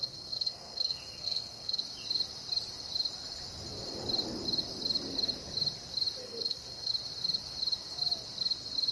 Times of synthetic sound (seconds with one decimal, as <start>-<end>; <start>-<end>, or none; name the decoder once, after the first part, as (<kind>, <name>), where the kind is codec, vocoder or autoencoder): 0.0-1.8 (codec, SNAC); 6.2-6.9